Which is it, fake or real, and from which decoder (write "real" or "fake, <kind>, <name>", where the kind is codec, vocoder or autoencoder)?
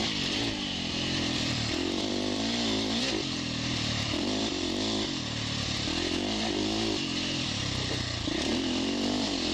fake, vocoder, BigVGAN v2